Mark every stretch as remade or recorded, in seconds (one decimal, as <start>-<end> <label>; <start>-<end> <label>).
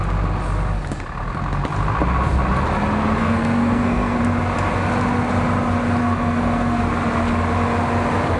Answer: 0.0-3.2 recorded; 3.2-4.2 remade; 4.2-6.0 recorded; 6.0-6.8 remade; 6.8-8.4 recorded